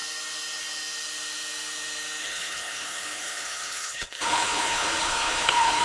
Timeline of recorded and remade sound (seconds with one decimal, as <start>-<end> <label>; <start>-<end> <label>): 0.0-2.2 recorded; 2.2-5.8 remade